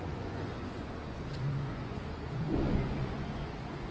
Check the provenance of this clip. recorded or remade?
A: remade